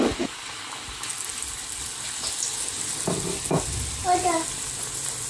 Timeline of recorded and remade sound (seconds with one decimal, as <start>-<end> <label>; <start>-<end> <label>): 0.0-5.3 recorded